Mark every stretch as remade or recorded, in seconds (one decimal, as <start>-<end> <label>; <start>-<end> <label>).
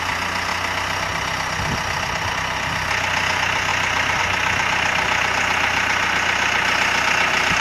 0.0-7.6 recorded